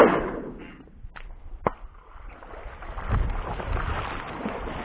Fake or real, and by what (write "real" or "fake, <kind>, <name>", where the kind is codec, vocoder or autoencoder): real